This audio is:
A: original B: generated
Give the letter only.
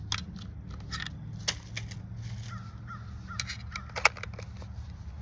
A